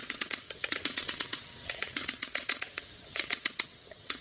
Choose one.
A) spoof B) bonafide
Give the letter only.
A